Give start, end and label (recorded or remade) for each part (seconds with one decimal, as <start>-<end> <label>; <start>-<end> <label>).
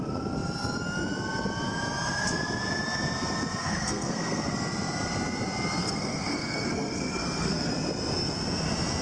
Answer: 0.0-3.6 recorded; 3.6-4.5 remade; 4.5-5.8 recorded; 5.8-7.7 remade; 7.7-9.0 recorded